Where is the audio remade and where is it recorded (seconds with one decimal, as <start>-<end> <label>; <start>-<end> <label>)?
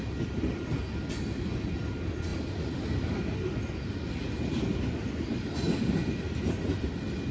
0.0-7.3 recorded